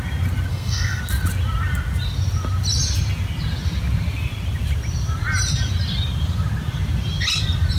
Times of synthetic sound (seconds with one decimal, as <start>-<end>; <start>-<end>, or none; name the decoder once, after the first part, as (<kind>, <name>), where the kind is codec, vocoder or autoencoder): 0.5-1.0 (codec, SNAC)

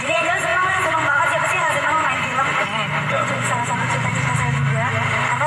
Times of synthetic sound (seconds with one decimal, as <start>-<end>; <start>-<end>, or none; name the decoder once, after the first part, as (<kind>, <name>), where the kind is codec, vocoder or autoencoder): 0.0-2.5 (vocoder, Vocos); 3.1-4.1

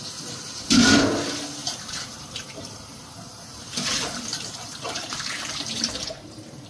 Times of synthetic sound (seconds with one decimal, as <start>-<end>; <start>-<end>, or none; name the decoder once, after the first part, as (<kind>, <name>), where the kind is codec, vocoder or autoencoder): 1.6-5.3 (vocoder, BigVGAN v2)

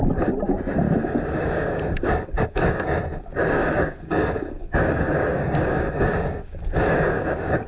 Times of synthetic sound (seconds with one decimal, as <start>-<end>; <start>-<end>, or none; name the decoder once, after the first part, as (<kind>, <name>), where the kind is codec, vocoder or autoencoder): 1.0-3.0 (codec, DAC); 3.6-7.7

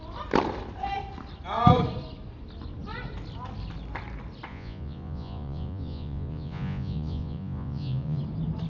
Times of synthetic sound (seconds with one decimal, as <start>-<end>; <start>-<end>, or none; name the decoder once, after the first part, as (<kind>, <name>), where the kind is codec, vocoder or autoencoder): 4.5-8.2 (vocoder, Vocos)

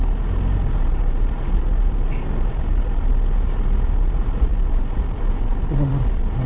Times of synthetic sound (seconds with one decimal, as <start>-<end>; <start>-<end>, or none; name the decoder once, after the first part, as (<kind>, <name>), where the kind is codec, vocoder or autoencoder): none

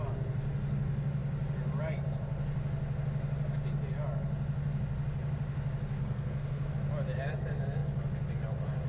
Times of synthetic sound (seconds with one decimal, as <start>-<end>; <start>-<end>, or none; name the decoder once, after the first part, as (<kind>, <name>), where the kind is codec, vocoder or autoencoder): 6.0-6.7 (codec, SNAC)